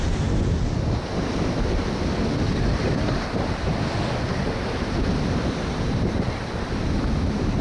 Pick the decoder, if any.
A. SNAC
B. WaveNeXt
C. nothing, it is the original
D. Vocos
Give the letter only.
C